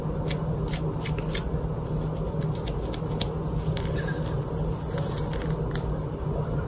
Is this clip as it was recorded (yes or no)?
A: yes